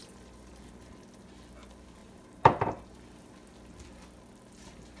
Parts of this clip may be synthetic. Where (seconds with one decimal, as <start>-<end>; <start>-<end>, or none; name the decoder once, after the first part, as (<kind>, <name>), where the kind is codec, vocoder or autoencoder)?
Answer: 2.0-3.3 (vocoder, BigVGAN v2)